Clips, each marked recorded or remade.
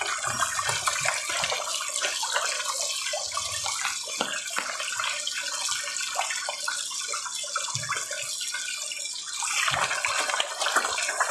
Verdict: recorded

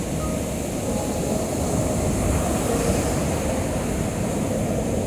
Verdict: recorded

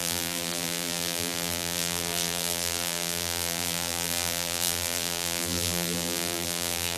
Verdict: remade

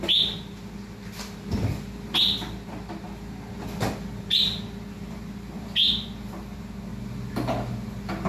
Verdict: recorded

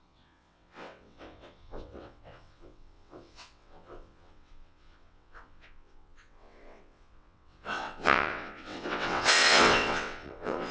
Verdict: remade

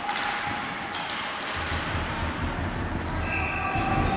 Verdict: recorded